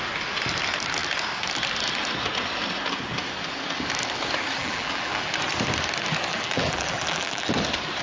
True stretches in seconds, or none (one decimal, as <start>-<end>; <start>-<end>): 0.0-4.6; 5.3-6.3; 7.5-8.0